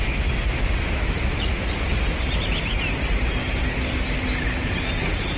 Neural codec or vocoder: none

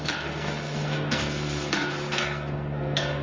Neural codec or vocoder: codec, SNAC